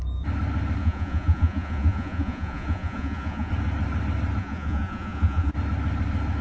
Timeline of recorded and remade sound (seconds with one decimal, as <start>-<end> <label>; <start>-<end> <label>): 0.0-0.8 recorded; 0.8-3.5 remade; 3.5-4.4 recorded; 4.4-5.5 remade; 5.5-6.4 recorded